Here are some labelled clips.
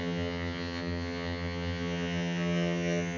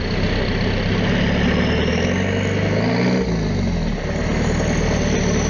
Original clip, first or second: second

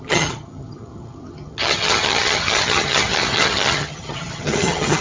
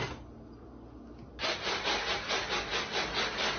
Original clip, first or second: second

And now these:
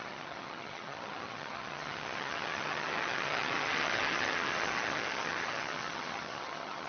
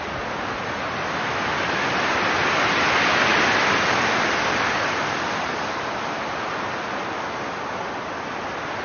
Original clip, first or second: second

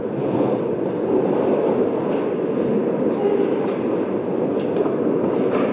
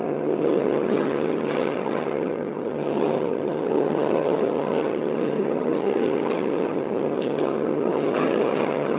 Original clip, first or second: first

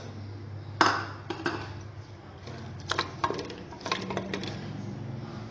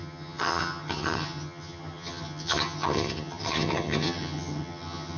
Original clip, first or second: first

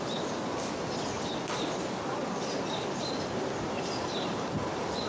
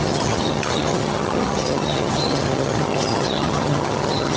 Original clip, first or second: first